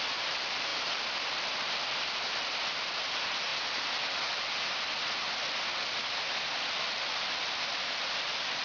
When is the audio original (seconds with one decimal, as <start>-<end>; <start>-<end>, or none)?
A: 0.0-8.6